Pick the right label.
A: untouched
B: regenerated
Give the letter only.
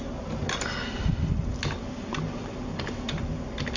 A